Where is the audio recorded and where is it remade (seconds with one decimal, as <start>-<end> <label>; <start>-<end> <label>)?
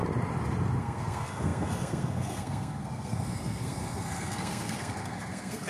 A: 0.0-0.8 recorded; 0.8-5.7 remade